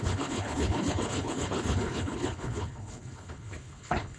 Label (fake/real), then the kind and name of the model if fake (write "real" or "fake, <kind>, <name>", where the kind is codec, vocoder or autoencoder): fake, codec, HILCodec